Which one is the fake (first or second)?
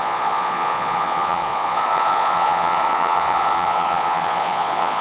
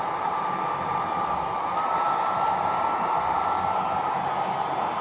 first